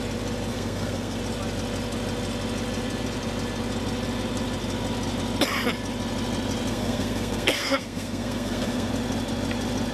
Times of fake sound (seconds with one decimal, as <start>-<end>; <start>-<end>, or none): 0.5-1.2; 6.7-8.9